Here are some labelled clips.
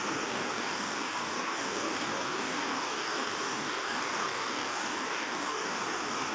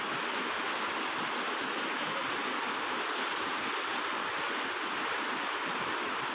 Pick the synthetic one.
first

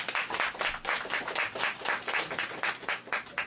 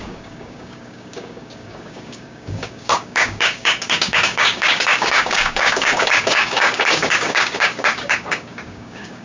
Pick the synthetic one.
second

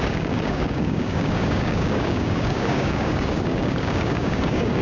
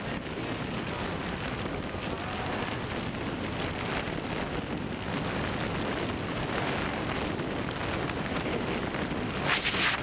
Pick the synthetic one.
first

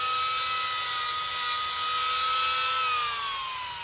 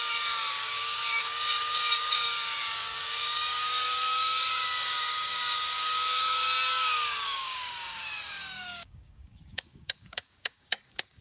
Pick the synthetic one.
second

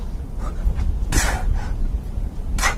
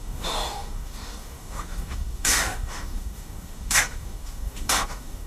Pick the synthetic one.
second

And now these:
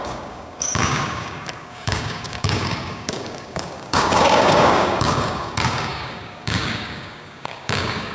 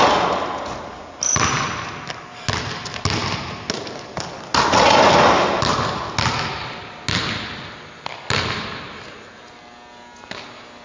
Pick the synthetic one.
first